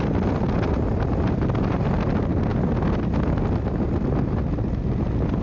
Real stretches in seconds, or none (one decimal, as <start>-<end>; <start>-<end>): 0.0-5.4